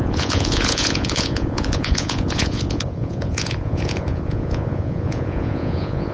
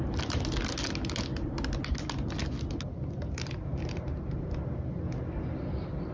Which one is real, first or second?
second